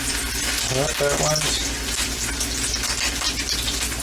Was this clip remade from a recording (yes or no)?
no